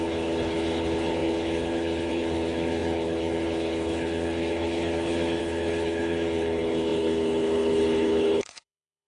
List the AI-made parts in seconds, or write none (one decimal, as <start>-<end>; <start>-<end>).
0.0-9.1